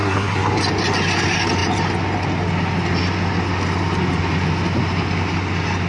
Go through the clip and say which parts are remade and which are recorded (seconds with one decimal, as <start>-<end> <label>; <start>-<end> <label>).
0.0-0.6 remade; 0.6-5.9 recorded